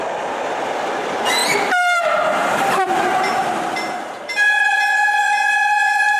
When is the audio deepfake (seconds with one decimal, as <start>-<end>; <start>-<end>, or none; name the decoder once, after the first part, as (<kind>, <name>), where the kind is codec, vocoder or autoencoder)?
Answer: 1.4-4.8 (vocoder, BigVGAN v2)